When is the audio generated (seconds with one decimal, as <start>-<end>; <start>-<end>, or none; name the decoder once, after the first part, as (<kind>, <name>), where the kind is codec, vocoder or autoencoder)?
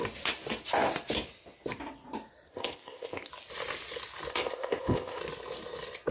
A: 2.5-3.3 (codec, ZipCodec); 4.3-5.2